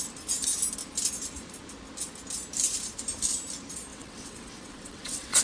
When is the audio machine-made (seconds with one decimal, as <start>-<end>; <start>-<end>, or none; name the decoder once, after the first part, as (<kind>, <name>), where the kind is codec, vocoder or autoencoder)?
3.9-5.4 (vocoder, WaveNeXt)